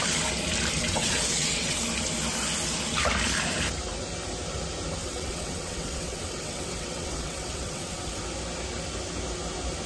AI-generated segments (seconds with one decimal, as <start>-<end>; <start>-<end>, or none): 0.8-1.8; 5.0-8.2